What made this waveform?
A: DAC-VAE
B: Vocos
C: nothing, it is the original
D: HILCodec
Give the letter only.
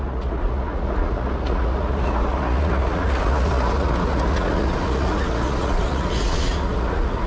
B